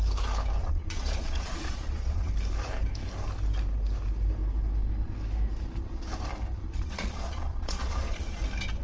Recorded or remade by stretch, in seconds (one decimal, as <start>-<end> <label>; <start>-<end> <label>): 0.0-0.6 recorded; 0.6-2.3 remade; 2.3-6.6 recorded; 6.6-8.4 remade; 8.4-8.8 recorded